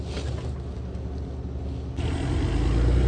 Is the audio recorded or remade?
recorded